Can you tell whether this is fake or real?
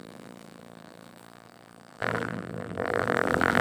fake